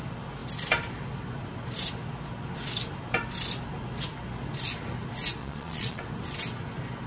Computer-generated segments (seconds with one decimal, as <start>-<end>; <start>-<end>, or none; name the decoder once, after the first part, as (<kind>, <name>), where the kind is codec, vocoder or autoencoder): 5.4-6.0 (vocoder, Vocos)